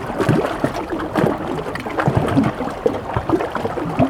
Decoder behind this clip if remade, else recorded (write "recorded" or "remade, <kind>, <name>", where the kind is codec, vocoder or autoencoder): recorded